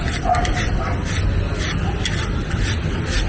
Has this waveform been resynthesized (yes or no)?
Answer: no